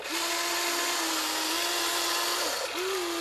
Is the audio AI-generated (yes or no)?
no